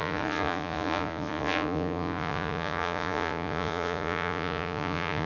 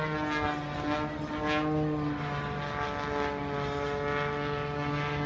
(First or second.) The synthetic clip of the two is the first